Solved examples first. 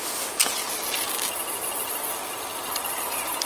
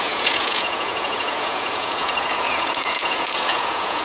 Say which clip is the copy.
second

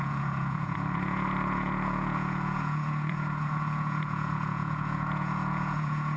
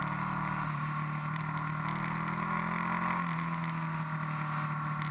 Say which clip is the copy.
first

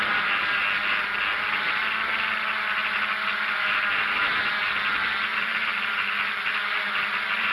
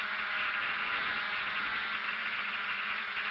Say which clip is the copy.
second